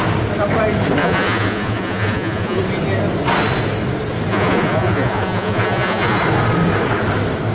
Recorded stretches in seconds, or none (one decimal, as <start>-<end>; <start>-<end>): 0.0-1.0; 2.6-4.3; 6.2-7.5